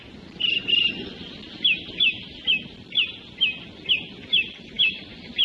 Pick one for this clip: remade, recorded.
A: recorded